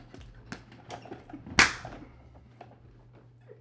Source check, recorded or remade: recorded